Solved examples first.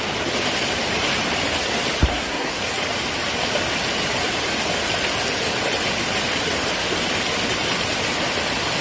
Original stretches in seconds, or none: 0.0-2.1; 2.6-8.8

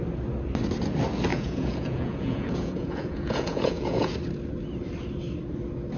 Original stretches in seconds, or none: 0.0-1.3; 4.1-6.0

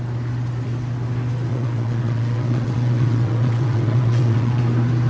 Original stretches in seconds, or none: 0.0-1.5; 4.6-5.1